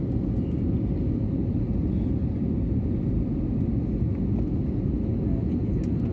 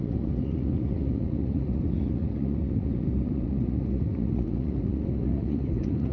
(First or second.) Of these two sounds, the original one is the first